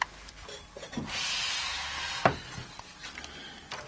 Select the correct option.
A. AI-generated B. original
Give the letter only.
B